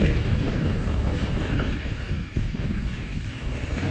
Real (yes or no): no